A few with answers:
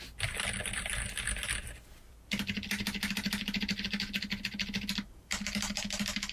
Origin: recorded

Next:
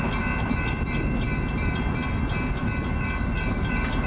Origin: recorded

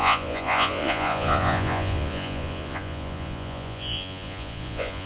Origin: remade